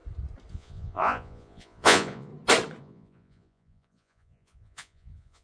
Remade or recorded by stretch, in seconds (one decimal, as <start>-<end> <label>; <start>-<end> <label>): 0.0-0.5 recorded; 0.5-2.3 remade; 2.3-2.8 recorded; 2.8-5.4 remade